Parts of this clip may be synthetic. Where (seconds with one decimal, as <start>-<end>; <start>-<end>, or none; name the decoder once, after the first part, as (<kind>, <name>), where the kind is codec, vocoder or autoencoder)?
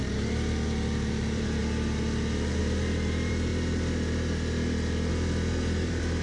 0.0-1.6 (vocoder, BigVGAN v2); 2.6-3.5; 5.1-6.2